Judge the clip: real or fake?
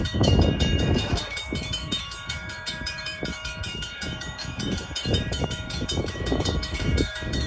fake